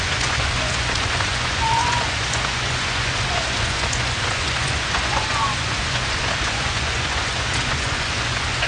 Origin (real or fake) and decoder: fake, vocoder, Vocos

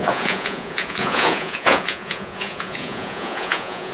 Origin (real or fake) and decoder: fake, vocoder, Vocos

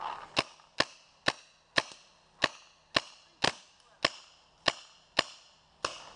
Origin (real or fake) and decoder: real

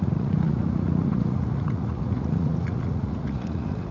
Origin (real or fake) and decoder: fake, vocoder, Vocos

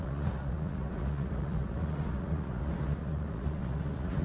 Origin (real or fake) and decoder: fake, vocoder, Vocos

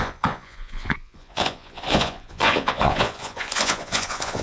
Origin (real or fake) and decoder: fake, vocoder, Vocos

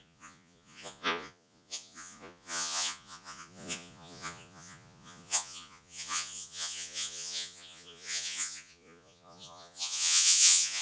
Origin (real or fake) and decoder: fake, vocoder, Vocos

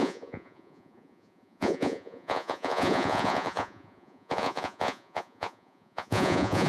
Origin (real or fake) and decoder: fake, vocoder, Vocos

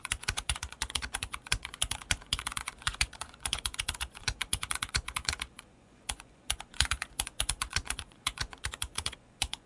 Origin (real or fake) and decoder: fake, vocoder, Vocos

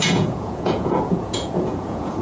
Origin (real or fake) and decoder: fake, vocoder, Vocos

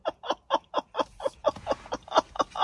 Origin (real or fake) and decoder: real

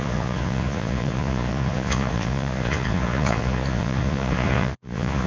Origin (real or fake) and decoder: fake, vocoder, Vocos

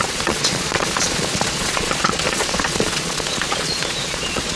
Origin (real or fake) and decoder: fake, vocoder, Vocos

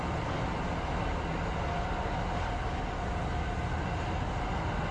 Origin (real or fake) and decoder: real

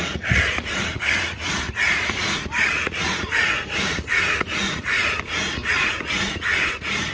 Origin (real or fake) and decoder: fake, vocoder, Vocos